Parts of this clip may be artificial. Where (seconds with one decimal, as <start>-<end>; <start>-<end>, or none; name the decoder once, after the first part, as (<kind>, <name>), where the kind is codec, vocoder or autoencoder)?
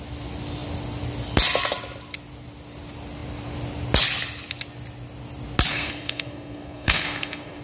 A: 5.7-7.6 (codec, SNAC)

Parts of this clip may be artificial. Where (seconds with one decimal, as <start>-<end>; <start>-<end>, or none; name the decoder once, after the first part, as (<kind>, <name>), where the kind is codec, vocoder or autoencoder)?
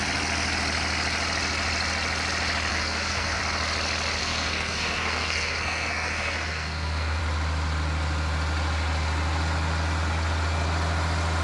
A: 2.7-3.4 (codec, SNAC); 4.2-7.2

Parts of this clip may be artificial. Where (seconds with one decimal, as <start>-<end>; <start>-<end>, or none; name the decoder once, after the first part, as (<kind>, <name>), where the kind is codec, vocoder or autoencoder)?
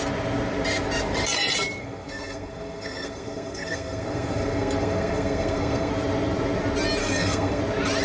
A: 1.8-5.9 (codec, SNAC); 7.0-7.6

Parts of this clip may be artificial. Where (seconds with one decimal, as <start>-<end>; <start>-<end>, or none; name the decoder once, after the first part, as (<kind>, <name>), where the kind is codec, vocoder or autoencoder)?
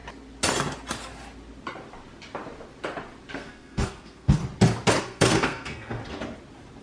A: 3.3-4.4 (codec, SNAC); 5.0-6.0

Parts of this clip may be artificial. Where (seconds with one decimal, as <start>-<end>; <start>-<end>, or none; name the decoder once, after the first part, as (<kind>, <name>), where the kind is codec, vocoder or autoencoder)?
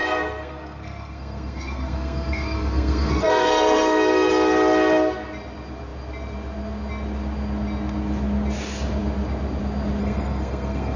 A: 0.0-4.3 (codec, SNAC); 10.0-11.0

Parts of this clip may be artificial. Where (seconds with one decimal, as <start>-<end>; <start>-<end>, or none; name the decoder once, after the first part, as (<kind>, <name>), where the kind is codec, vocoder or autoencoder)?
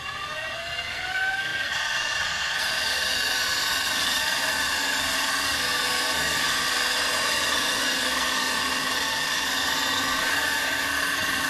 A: 0.0-11.5 (codec, SNAC)